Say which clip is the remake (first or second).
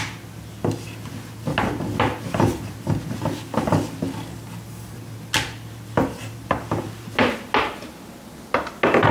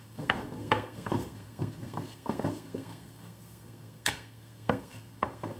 second